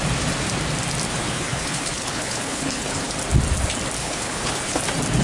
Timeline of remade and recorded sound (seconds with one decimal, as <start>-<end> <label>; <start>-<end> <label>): 0.0-1.1 recorded; 1.1-3.1 remade; 3.1-4.0 recorded; 4.0-4.8 remade; 4.8-5.2 recorded